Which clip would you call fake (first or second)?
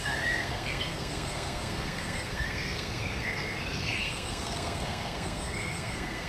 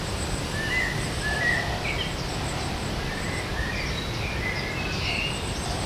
first